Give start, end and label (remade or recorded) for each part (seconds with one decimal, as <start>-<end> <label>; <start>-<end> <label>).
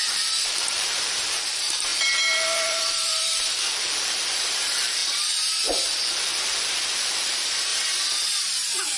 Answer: 0.0-7.7 remade; 7.7-8.4 recorded; 8.4-9.0 remade